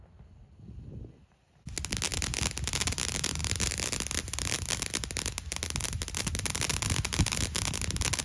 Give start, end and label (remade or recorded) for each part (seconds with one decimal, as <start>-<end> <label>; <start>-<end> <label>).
0.0-8.2 recorded